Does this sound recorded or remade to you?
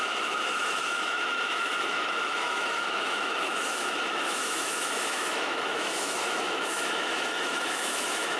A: remade